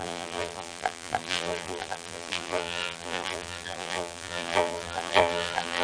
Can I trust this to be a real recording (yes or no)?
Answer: no